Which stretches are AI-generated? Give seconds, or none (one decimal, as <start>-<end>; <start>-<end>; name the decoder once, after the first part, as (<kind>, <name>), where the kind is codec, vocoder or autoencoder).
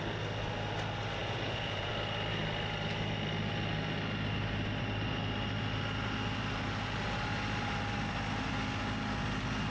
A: 1.2-1.9 (vocoder, Vocos)